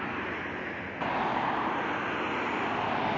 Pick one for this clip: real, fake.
real